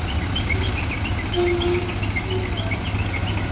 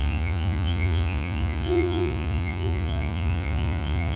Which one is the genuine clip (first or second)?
first